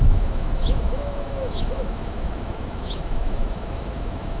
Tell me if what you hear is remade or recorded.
remade